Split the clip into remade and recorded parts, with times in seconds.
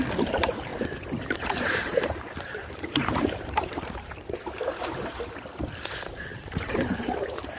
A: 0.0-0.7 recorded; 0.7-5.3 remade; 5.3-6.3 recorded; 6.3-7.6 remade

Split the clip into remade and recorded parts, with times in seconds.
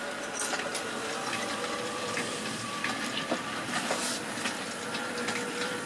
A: 0.0-0.7 recorded; 0.7-4.2 remade; 4.2-5.9 recorded